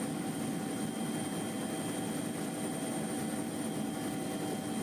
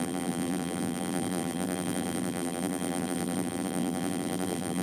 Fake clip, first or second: second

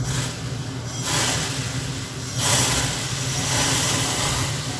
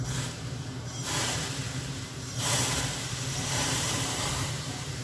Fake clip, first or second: second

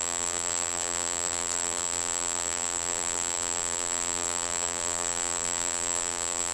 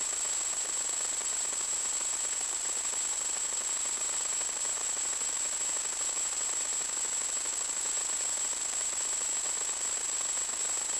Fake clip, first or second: first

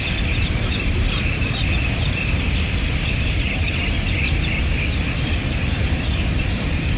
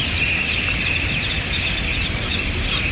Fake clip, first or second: first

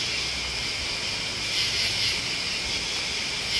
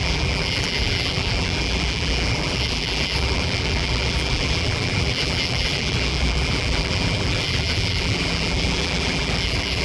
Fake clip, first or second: second